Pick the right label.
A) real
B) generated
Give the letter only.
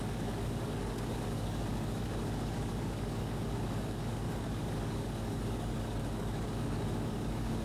B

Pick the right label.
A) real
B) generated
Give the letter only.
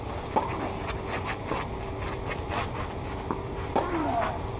A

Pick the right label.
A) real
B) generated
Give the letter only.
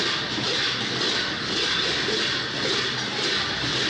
A